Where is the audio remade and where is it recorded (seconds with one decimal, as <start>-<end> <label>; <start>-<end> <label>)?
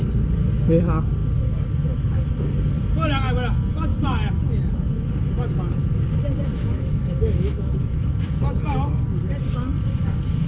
0.0-6.5 recorded; 6.5-8.1 remade; 8.1-10.5 recorded